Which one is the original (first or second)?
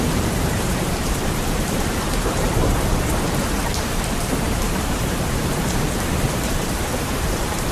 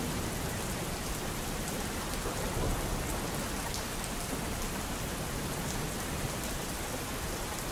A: second